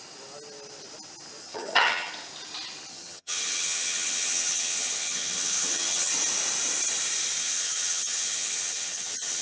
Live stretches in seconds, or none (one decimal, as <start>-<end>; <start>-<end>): 0.0-1.4; 2.1-2.9; 6.1-7.4